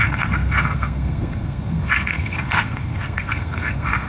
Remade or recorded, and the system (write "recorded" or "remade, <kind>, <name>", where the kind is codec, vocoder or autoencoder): remade, codec, SNAC